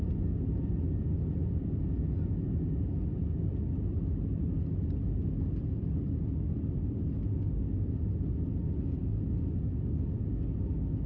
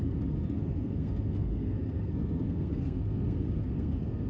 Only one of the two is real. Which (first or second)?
first